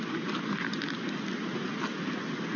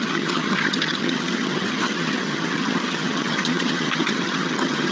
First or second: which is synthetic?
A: second